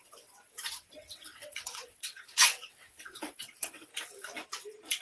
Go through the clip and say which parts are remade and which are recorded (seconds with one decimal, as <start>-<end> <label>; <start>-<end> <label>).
0.0-3.9 remade; 3.9-5.0 recorded